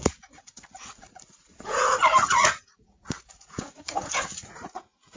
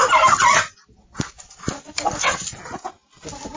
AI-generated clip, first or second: first